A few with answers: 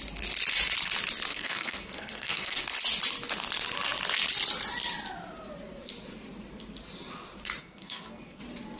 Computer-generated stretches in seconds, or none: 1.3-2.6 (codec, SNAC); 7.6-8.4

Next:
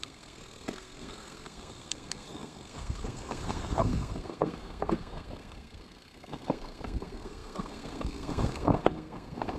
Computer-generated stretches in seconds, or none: 0.0-9.6 (codec, SNAC)

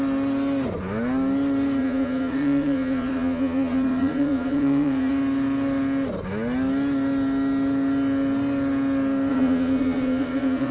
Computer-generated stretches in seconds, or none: 1.8-5.1 (vocoder, Vocos); 9.3-10.7

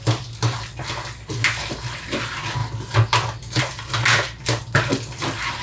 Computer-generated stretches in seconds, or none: none